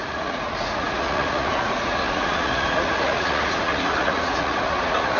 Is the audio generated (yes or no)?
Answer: yes